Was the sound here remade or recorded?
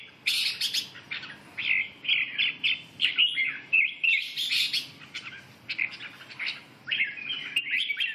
recorded